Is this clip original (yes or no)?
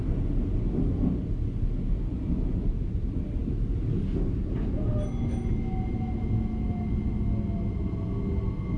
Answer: yes